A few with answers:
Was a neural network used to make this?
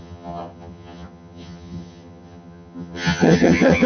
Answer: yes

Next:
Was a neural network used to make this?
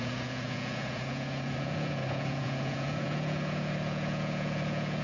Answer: yes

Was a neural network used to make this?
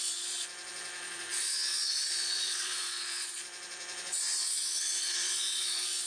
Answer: yes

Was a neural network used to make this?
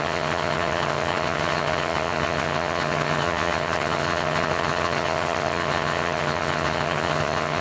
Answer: yes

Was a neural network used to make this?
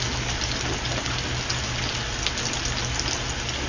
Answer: no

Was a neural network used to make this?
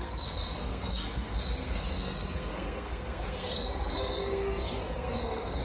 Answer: yes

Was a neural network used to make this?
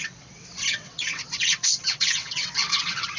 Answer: yes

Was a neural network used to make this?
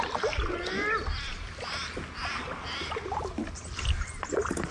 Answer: no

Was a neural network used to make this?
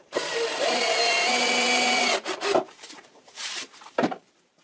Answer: yes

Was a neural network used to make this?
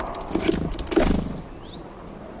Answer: no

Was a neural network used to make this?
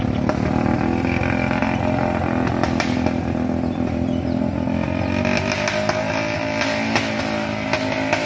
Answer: no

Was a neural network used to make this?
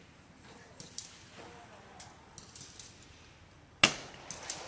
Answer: no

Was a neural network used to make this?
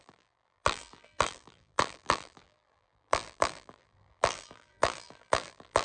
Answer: yes